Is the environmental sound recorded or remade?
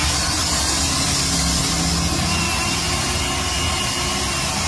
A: recorded